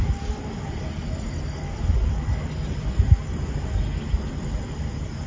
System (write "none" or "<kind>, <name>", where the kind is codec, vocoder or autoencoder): none